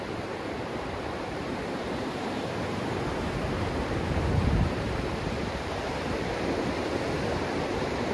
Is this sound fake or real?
fake